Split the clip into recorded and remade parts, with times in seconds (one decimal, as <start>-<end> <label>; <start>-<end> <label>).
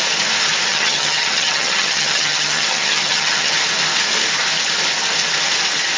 0.0-0.7 recorded; 0.7-3.5 remade; 3.5-6.0 recorded